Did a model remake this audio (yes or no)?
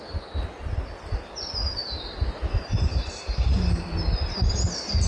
no